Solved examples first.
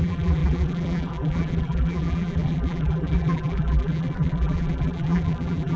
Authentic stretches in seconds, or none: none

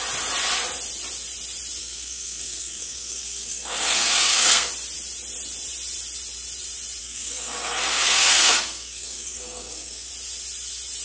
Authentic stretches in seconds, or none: 0.0-1.8; 4.7-7.0; 10.1-11.0

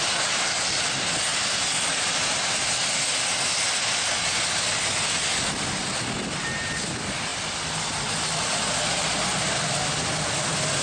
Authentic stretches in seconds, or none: 0.0-7.3; 8.1-10.8